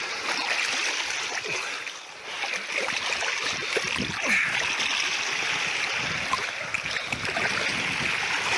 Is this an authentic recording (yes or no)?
yes